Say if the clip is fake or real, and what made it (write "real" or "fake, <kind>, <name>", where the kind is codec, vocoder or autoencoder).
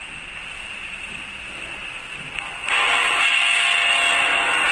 real